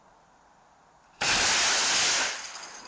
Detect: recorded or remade recorded